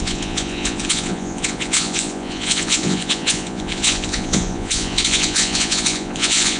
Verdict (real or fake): fake